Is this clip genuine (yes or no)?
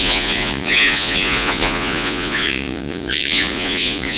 no